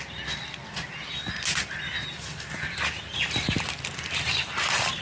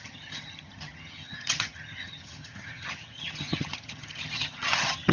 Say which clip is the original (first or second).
first